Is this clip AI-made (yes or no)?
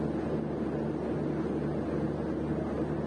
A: no